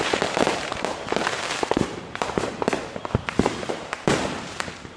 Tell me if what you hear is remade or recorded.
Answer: remade